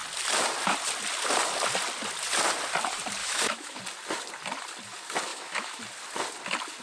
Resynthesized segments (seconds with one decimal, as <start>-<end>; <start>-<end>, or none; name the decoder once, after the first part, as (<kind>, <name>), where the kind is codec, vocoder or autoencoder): 3.2-3.8 (autoencoder, DAC-VAE); 5.3-5.8